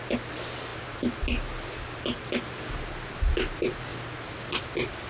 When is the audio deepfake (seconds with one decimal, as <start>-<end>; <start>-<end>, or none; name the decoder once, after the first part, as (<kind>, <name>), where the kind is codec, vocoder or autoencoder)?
none